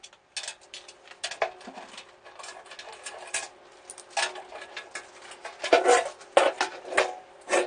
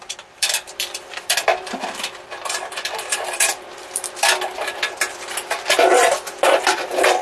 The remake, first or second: second